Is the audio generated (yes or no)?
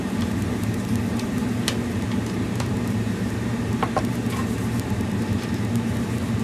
yes